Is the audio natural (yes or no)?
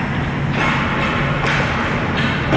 yes